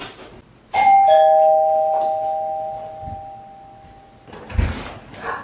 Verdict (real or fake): real